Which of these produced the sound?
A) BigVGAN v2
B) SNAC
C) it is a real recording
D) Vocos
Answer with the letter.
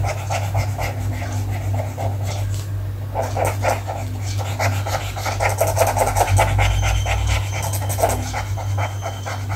C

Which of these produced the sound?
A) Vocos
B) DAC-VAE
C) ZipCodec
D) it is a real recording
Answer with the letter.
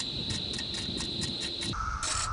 D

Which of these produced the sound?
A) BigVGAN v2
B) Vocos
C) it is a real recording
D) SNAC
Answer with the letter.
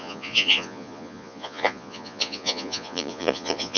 B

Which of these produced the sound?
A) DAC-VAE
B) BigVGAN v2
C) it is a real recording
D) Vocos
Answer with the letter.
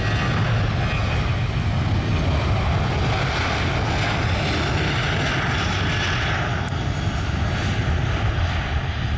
C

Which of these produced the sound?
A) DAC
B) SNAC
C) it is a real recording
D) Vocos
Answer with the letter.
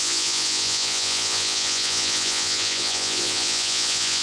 D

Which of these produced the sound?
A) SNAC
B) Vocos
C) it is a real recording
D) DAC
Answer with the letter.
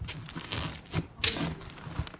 C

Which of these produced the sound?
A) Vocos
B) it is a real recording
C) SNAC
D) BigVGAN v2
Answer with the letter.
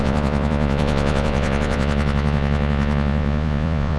A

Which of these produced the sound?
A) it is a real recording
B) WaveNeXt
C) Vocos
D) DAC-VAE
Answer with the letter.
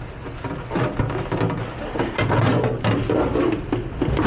A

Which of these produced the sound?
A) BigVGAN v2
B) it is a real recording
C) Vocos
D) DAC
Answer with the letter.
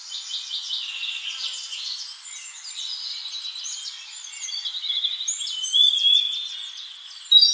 B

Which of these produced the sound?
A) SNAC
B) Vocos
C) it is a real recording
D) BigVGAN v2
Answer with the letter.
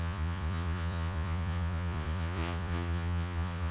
B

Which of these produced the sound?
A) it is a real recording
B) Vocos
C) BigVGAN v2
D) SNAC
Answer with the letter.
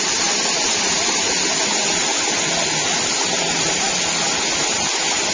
A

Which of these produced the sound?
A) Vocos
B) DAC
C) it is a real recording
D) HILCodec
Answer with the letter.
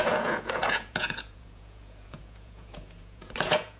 A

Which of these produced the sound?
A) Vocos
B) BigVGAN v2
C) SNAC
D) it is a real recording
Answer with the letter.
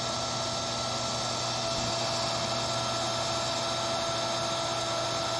D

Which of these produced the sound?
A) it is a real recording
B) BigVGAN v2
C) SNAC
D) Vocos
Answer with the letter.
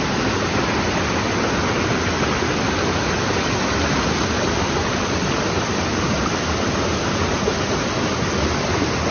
A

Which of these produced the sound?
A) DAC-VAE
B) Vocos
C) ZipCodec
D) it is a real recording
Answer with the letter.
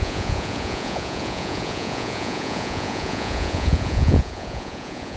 B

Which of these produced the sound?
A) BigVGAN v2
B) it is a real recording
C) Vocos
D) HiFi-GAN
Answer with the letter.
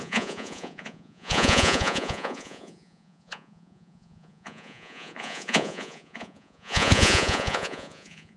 C